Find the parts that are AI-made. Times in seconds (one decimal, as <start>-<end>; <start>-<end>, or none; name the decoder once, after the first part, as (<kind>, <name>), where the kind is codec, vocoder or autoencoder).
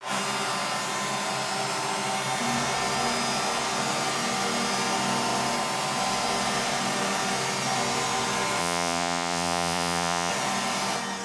8.6-10.3 (vocoder, Vocos)